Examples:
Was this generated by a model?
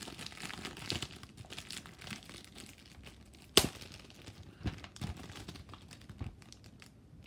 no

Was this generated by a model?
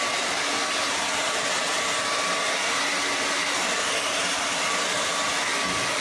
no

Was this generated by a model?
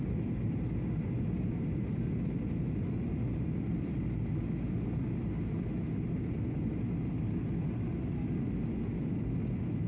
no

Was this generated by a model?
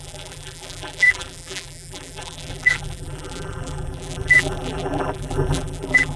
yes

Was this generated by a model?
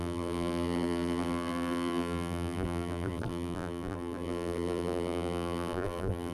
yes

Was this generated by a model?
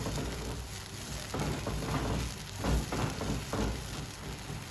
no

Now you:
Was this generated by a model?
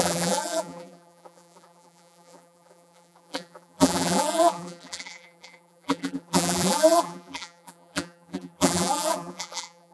yes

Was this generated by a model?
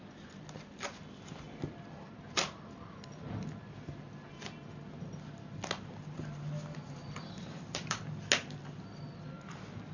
no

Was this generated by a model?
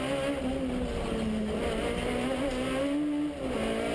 no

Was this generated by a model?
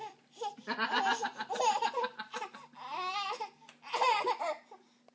no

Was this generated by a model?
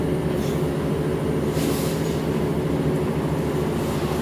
no